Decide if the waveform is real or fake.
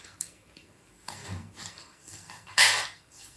fake